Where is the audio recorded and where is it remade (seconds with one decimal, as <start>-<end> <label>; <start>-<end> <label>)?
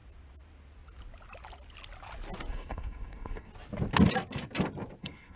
0.0-2.5 recorded; 2.5-3.5 remade; 3.5-5.0 recorded; 5.0-5.4 remade